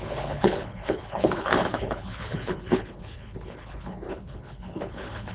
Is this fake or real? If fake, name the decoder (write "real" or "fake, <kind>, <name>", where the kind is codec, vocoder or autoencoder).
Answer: fake, codec, HILCodec